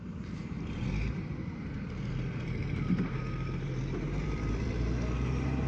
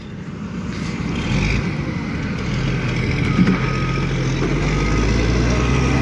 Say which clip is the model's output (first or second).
first